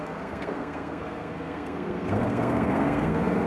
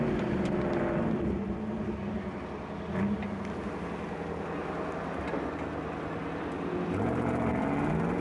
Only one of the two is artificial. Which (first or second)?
first